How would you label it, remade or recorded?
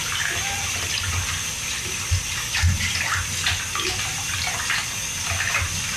recorded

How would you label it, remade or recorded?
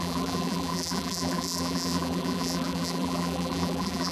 remade